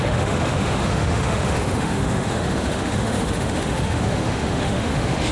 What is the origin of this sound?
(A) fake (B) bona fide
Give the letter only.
A